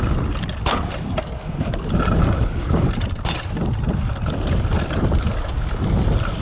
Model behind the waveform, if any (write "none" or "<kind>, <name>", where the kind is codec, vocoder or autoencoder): none